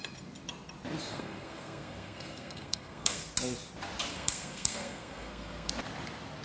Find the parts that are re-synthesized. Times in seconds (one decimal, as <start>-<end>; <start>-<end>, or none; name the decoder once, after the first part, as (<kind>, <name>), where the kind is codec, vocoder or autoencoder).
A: 1.1-3.3 (codec, SNAC); 4.1-5.7